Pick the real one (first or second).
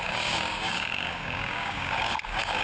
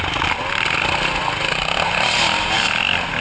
second